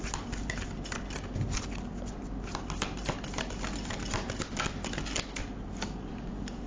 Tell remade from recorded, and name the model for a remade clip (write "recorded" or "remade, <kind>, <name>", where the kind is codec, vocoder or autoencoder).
recorded